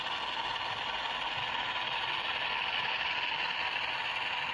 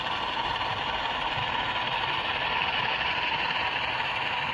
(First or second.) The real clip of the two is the first